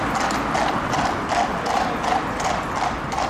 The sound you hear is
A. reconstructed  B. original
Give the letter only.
B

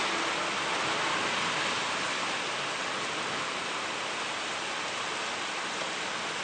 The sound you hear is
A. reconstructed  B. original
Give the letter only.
B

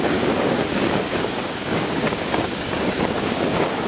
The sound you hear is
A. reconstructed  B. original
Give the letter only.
A